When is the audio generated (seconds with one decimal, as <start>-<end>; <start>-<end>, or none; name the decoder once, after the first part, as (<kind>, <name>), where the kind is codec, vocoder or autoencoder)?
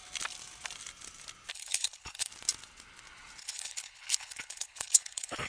1.5-2.3 (codec, HILCodec); 3.4-5.5